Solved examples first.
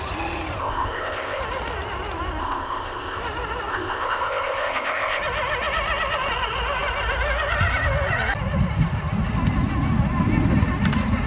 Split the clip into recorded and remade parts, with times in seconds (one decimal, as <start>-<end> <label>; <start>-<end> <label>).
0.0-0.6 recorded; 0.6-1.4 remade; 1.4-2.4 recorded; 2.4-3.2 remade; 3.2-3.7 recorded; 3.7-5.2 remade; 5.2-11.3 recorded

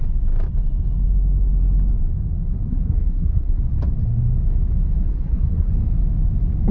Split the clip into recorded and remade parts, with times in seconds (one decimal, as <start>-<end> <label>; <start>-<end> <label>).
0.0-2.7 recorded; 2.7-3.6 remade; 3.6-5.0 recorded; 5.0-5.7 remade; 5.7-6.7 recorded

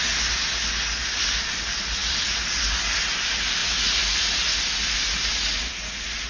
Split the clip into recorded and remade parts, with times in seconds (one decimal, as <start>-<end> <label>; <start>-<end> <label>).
0.0-6.3 recorded

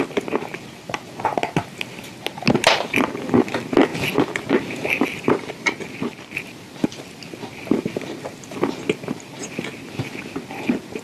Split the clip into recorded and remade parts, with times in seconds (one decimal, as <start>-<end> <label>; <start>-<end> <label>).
0.0-11.0 recorded